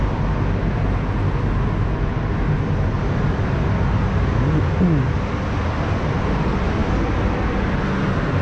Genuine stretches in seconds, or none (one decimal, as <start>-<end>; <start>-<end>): 0.0-8.4